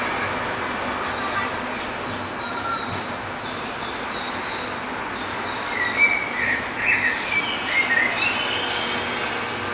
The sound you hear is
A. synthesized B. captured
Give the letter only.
B